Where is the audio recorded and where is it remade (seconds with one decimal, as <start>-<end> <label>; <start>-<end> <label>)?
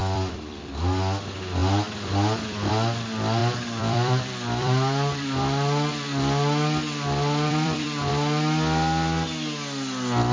0.0-0.7 remade; 0.7-1.6 recorded; 1.6-2.7 remade; 2.7-3.4 recorded; 3.4-8.1 remade; 8.1-10.3 recorded